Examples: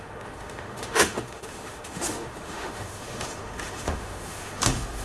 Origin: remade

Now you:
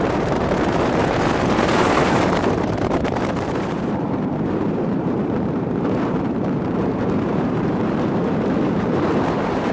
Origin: remade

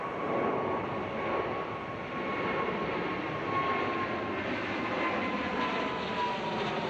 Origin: recorded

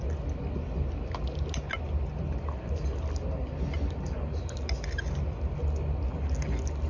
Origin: recorded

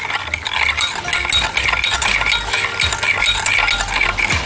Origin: recorded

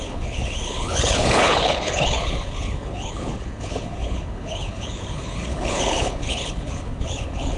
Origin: remade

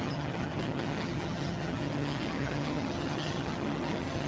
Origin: remade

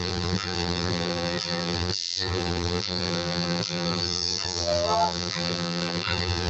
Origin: remade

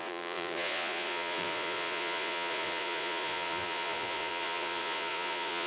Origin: remade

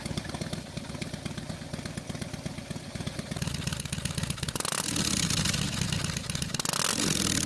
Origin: recorded